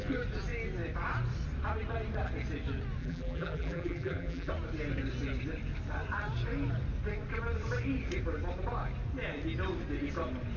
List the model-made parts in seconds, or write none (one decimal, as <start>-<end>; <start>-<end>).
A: 3.0-4.5